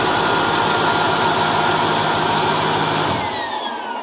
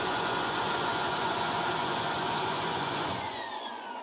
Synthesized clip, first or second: second